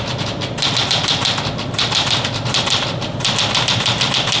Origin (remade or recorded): recorded